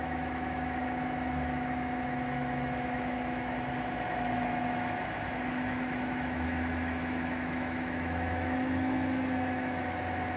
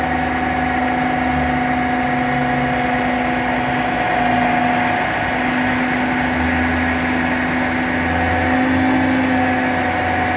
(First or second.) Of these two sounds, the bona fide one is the second